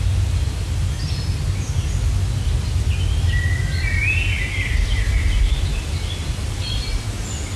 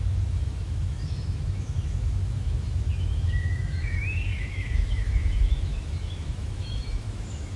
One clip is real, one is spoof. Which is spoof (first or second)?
second